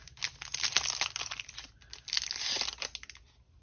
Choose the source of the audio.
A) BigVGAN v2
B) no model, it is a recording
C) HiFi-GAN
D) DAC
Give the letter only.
B